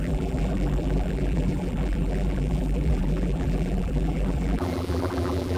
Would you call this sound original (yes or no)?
no